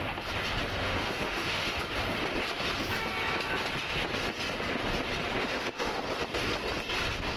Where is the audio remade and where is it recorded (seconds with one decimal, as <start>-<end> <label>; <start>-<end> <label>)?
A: 0.0-0.8 recorded; 0.8-1.8 remade; 1.8-5.4 recorded; 5.4-6.0 remade; 6.0-7.4 recorded